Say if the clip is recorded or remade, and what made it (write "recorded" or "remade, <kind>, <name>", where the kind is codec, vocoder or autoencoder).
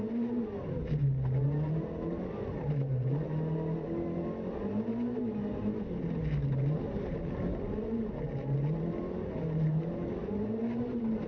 recorded